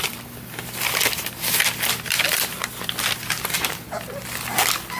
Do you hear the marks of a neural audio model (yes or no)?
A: no